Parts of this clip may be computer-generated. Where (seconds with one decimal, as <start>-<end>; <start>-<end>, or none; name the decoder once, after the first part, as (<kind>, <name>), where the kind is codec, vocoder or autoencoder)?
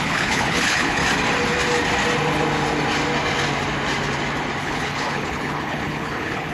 0.0-1.0 (codec, HILCodec); 4.6-6.5